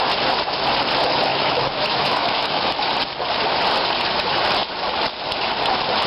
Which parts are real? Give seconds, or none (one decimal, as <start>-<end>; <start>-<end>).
0.0-1.3; 2.9-6.1